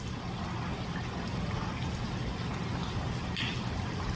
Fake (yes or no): no